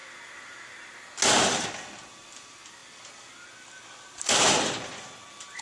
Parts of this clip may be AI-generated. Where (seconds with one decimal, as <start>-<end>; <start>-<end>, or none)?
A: 1.4-5.6